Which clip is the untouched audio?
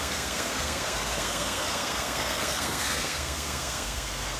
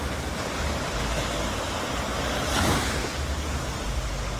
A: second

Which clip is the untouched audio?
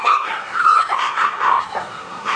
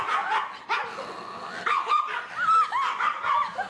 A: second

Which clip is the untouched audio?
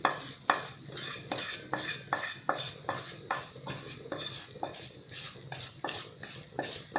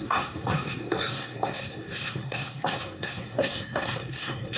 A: first